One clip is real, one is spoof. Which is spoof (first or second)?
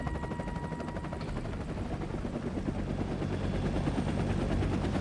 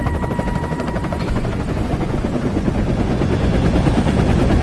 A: second